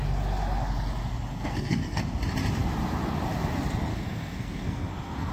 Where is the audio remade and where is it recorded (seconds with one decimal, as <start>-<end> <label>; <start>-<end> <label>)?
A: 0.0-1.3 recorded; 1.3-2.0 remade; 2.0-3.9 recorded; 3.9-5.3 remade